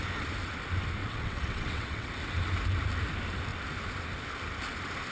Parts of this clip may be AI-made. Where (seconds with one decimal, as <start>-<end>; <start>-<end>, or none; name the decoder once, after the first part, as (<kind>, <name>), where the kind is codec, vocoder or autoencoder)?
1.0-2.1 (vocoder, WaveNeXt)